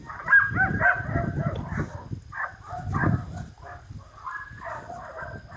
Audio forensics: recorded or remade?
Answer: recorded